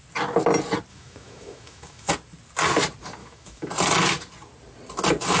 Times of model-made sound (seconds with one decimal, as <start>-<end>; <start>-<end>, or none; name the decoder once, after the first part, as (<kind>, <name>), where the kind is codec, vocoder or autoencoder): 0.9-2.1 (autoencoder, DAC-VAE); 3.2-3.7